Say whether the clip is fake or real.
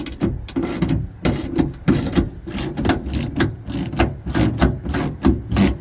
real